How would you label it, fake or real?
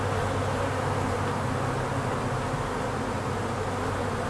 real